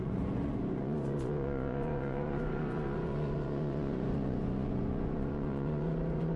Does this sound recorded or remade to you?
remade